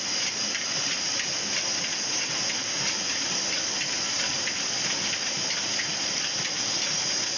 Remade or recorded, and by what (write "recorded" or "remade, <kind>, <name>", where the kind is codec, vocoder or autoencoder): remade, vocoder, BigVGAN v2